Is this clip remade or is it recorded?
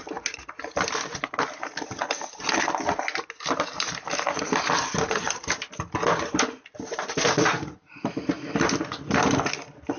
recorded